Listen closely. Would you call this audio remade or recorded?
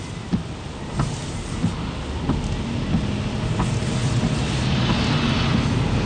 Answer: recorded